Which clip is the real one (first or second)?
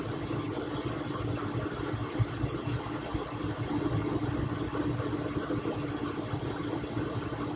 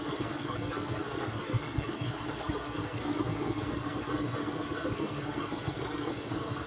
first